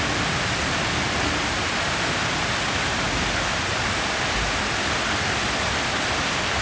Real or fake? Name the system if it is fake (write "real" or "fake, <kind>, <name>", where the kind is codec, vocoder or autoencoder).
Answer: real